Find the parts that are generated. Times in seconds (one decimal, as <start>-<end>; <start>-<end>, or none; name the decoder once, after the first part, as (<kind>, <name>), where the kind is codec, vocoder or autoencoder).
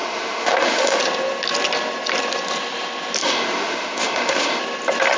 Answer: 0.0-1.0 (autoencoder, DAC-VAE); 3.2-4.6